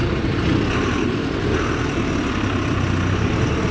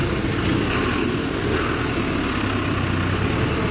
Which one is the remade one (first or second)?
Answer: first